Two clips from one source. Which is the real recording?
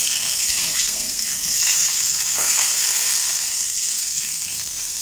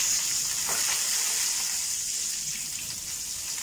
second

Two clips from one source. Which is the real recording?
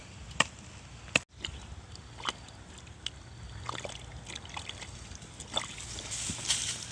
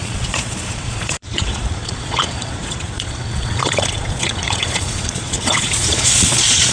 first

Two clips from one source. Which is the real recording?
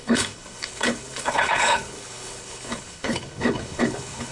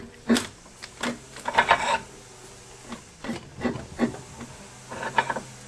second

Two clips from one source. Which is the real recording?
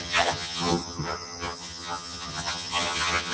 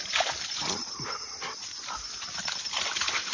second